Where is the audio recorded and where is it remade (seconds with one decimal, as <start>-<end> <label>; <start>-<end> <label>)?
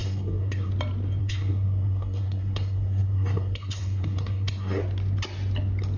0.0-0.7 remade; 0.7-1.2 recorded; 1.2-4.8 remade; 4.8-6.0 recorded